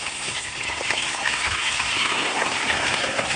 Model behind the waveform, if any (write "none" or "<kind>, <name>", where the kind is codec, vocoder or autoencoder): codec, SNAC